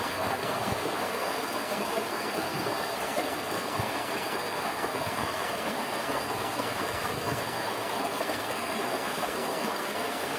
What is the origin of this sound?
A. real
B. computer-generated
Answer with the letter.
B